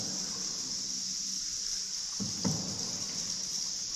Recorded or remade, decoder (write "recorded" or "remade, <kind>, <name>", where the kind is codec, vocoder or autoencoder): recorded